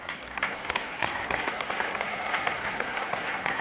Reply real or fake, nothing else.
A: fake